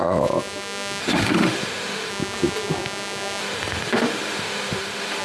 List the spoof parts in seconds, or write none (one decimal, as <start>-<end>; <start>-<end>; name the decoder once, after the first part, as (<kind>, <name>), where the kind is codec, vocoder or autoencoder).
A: 1.0-2.1 (autoencoder, DAC-VAE); 3.4-5.2

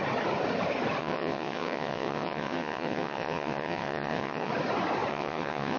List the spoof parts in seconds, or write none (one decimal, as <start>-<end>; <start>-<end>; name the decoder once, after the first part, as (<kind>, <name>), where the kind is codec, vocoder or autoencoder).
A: 1.0-4.5 (vocoder, WaveNeXt); 5.1-5.8

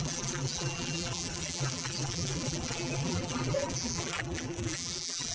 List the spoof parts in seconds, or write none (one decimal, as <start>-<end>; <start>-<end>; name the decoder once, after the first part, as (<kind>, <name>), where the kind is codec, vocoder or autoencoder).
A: 0.0-5.3 (vocoder, BigVGAN v2)